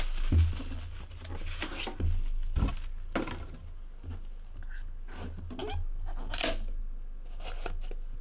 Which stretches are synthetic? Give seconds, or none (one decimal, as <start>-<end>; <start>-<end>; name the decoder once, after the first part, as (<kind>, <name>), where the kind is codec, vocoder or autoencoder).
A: none